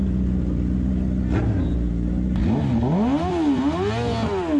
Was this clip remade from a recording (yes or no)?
no